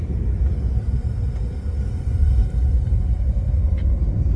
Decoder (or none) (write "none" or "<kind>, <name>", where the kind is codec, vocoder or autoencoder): none